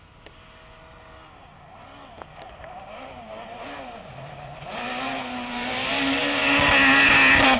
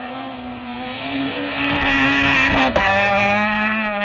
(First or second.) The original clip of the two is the first